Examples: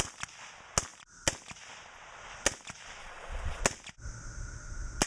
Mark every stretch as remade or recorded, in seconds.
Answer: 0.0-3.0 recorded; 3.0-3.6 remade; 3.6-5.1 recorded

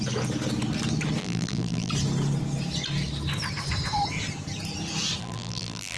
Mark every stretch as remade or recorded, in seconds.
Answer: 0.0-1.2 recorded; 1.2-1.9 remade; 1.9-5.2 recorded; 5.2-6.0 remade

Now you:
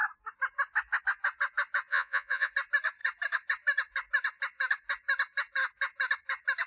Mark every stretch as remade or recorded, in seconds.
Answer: 0.0-1.9 recorded; 1.9-2.5 remade; 2.5-6.7 recorded

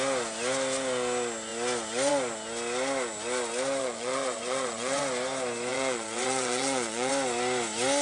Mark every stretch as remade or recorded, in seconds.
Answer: 0.0-3.8 recorded; 3.8-5.0 remade; 5.0-5.7 recorded; 5.7-7.1 remade; 7.1-8.0 recorded

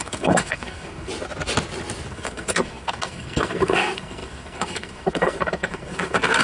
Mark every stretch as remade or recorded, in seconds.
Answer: 0.0-1.1 remade; 1.1-2.1 recorded; 2.1-6.4 remade

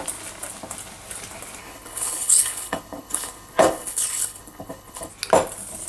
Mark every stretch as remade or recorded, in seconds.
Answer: 0.0-1.6 recorded; 1.6-5.1 remade; 5.1-5.9 recorded

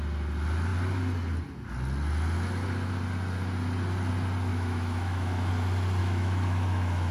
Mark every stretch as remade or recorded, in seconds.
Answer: 0.0-4.5 recorded; 4.5-5.5 remade; 5.5-6.0 recorded; 6.0-7.1 remade

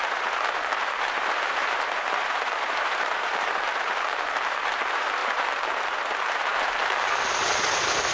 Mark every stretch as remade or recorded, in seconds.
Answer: 0.0-8.1 remade